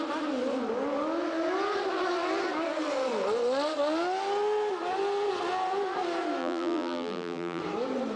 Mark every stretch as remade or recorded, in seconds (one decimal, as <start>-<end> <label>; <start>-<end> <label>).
0.0-6.4 recorded; 6.4-7.6 remade; 7.6-8.2 recorded